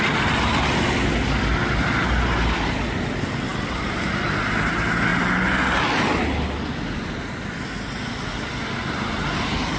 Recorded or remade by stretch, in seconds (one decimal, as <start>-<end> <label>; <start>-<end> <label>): 0.0-9.8 recorded